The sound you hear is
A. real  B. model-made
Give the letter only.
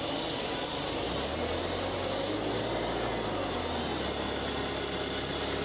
A